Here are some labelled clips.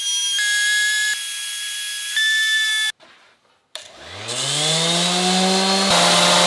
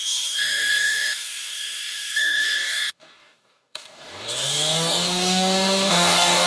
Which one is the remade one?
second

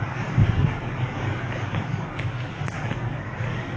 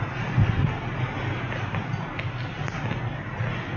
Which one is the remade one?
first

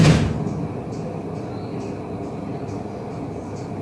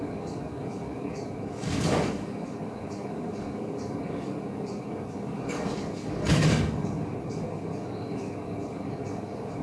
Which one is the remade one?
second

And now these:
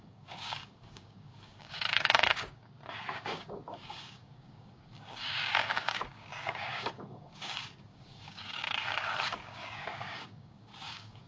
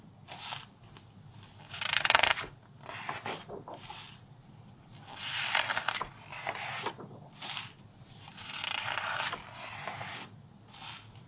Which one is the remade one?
first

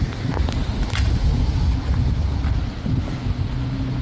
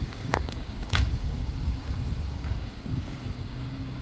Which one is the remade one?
second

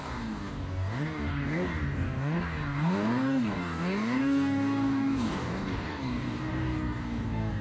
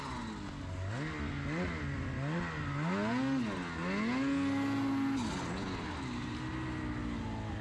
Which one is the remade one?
first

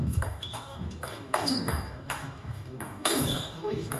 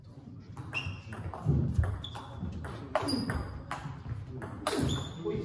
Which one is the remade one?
first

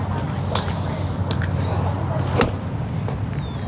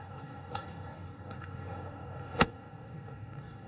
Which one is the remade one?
second